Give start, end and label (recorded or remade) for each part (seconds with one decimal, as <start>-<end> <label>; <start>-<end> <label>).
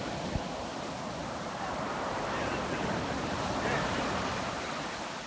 0.0-1.2 recorded; 1.2-4.4 remade; 4.4-5.3 recorded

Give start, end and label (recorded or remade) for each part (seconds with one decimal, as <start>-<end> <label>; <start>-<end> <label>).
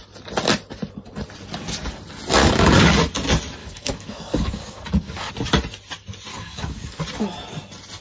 0.0-2.4 recorded; 2.4-2.9 remade; 2.9-3.6 recorded; 3.6-5.3 remade; 5.3-6.3 recorded; 6.3-7.0 remade; 7.0-8.0 recorded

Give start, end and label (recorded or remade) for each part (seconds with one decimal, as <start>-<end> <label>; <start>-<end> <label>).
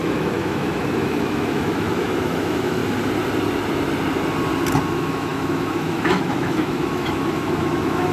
0.0-2.8 remade; 2.8-4.8 recorded; 4.8-8.1 remade